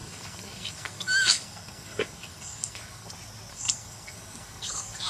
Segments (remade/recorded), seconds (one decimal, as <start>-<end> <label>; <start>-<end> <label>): 0.0-3.1 remade; 3.1-3.5 recorded; 3.5-5.1 remade

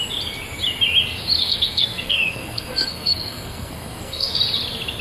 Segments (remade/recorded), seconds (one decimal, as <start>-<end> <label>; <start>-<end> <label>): 0.0-1.4 recorded; 1.4-4.4 remade; 4.4-5.0 recorded

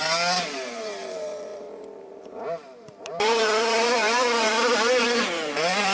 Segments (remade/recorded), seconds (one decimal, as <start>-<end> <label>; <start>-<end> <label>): 0.0-5.9 remade